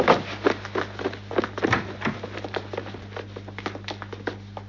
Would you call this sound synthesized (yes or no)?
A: no